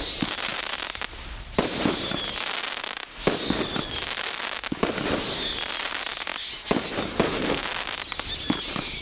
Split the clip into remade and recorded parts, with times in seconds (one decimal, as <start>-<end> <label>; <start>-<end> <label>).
0.0-9.0 recorded